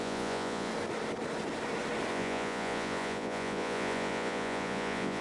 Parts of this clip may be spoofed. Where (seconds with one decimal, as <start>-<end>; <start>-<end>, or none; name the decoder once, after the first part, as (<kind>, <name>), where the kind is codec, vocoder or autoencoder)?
0.0-0.7 (vocoder, Vocos); 2.1-5.2